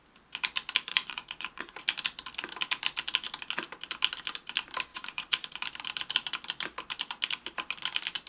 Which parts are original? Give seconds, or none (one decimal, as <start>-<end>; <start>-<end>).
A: 0.0-0.9; 1.8-4.9; 5.5-8.3